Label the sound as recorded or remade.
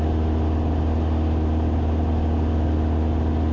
recorded